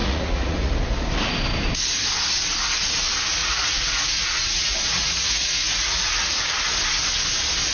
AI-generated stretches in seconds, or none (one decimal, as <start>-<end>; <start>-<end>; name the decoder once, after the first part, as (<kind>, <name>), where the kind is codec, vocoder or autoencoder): 0.0-0.7 (vocoder, Vocos); 3.4-6.2